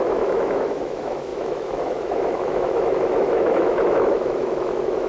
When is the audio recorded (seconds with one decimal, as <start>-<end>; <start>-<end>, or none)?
none